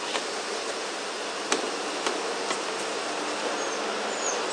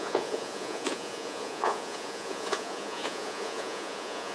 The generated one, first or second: second